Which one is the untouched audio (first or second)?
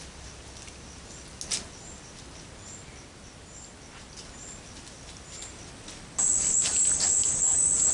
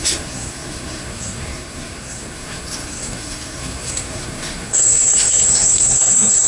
first